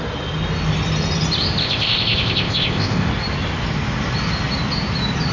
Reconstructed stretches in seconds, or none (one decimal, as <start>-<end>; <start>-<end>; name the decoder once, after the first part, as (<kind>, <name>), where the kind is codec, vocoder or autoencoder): 1.6-3.1 (codec, ZipCodec)